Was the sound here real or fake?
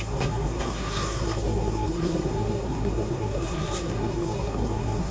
fake